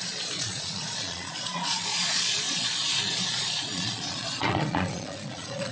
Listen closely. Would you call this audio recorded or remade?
remade